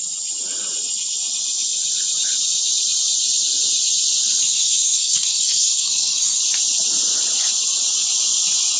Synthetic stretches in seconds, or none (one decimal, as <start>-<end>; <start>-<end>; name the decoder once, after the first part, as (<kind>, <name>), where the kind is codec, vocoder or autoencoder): 4.4-6.4 (codec, SNAC)